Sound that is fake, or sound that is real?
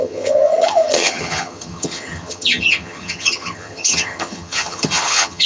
fake